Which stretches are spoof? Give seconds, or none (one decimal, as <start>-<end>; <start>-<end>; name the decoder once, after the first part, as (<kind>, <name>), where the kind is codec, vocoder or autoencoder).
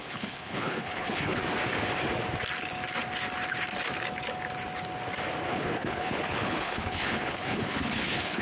0.0-1.4 (codec, HILCodec); 5.5-8.4